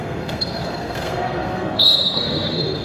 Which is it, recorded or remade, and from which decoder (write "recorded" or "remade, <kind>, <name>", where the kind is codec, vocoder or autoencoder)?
remade, codec, SNAC